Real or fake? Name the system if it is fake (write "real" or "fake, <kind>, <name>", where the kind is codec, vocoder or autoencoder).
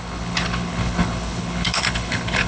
fake, codec, HILCodec